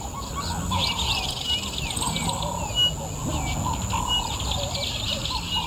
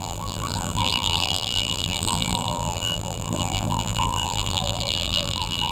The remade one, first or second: second